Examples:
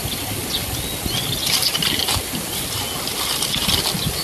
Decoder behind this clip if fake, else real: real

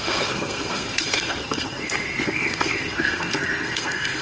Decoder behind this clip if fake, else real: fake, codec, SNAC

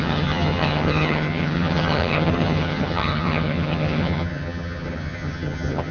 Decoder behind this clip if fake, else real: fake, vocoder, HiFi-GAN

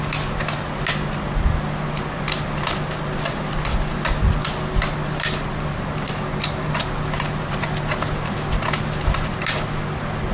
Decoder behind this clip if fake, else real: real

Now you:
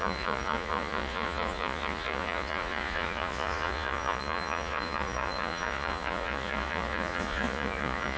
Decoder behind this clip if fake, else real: fake, vocoder, Vocos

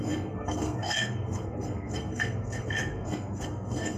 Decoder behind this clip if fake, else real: fake, codec, SNAC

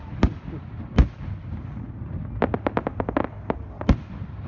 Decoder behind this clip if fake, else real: real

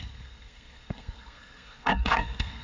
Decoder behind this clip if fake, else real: fake, codec, SNAC